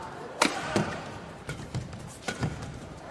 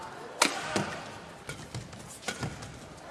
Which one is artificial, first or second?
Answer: first